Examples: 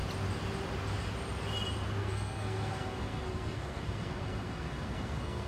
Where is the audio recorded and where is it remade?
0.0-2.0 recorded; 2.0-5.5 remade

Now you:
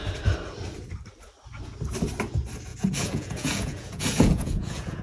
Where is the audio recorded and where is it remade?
0.0-2.7 recorded; 2.7-5.0 remade

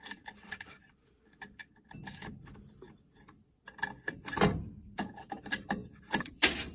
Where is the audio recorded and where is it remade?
0.0-1.6 remade; 1.6-4.1 recorded; 4.1-6.7 remade

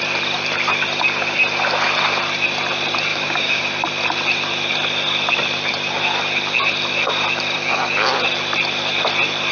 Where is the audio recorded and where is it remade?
0.0-3.1 recorded; 3.1-3.6 remade; 3.6-9.5 recorded

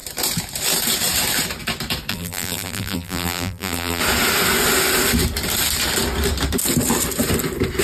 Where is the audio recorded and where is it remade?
0.0-2.1 recorded; 2.1-4.0 remade; 4.0-7.8 recorded